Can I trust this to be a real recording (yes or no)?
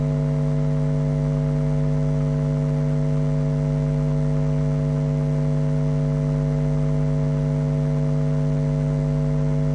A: yes